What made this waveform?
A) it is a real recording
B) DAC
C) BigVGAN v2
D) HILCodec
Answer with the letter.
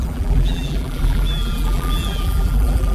C